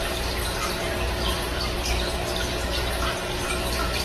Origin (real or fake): real